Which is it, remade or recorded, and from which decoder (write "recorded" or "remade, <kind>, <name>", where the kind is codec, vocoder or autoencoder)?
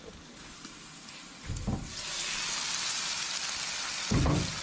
recorded